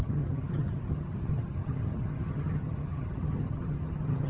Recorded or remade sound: remade